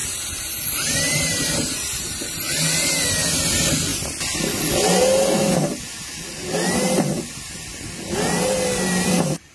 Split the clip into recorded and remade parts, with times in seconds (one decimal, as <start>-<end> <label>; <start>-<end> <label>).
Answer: 0.0-3.0 remade; 3.0-9.5 recorded